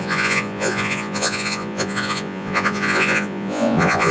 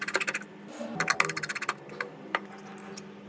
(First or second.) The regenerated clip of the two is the first